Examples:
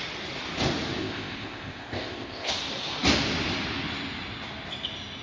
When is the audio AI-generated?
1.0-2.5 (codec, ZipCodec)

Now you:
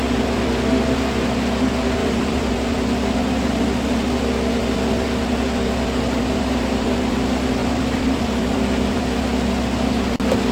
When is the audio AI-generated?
2.0-2.5 (vocoder, BigVGAN v2); 7.6-9.0